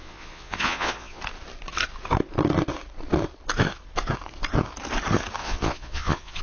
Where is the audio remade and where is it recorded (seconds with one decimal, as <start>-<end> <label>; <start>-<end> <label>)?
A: 0.0-1.2 remade; 1.2-5.4 recorded; 5.4-6.4 remade